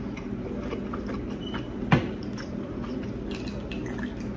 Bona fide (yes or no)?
yes